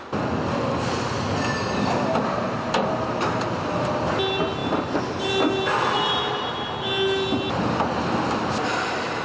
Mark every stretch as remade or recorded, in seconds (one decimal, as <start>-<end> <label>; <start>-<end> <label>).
0.0-9.2 recorded